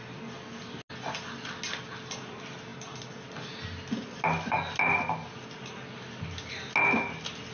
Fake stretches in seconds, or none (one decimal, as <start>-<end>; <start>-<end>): none